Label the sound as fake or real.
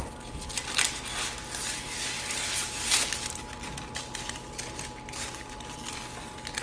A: real